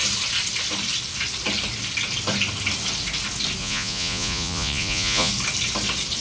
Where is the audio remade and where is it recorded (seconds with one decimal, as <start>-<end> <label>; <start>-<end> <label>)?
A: 0.0-3.6 recorded; 3.6-5.3 remade; 5.3-6.2 recorded